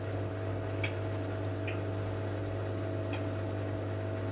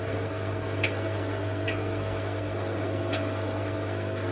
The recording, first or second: first